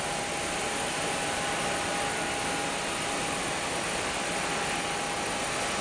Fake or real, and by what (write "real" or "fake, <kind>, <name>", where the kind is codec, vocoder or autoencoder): real